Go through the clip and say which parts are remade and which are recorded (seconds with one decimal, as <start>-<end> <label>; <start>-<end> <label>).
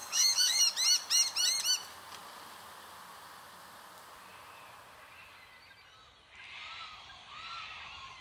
0.0-0.6 remade; 0.6-8.2 recorded